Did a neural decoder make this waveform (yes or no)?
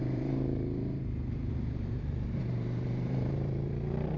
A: yes